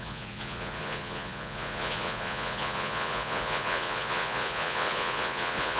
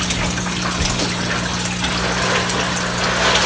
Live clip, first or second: second